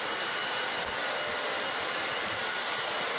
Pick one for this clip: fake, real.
real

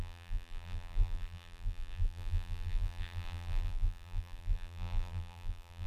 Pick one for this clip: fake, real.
fake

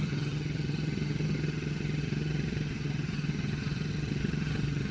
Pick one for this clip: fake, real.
fake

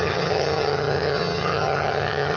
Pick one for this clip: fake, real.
fake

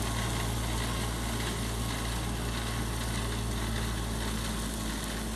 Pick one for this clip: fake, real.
real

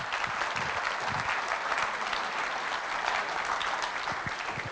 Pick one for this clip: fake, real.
real